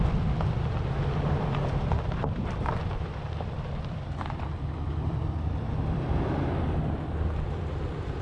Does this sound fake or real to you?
fake